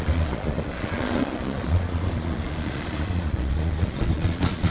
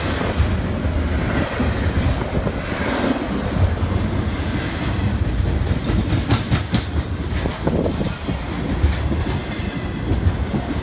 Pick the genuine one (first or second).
second